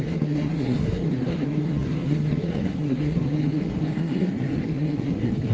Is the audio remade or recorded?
remade